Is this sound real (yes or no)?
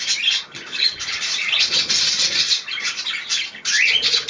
yes